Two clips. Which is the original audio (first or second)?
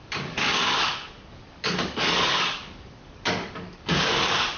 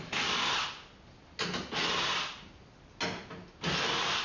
second